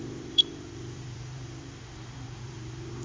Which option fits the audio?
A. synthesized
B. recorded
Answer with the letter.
A